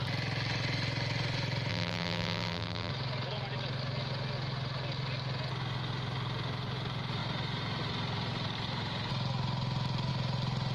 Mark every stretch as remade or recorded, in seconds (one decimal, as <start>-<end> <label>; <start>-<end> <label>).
0.0-1.7 recorded; 1.7-2.9 remade; 2.9-10.7 recorded